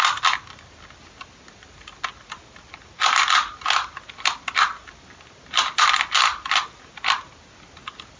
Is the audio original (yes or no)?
yes